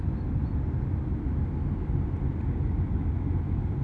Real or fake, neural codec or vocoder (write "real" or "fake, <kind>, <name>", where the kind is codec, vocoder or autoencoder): real